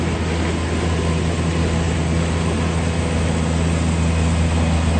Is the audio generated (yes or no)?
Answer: no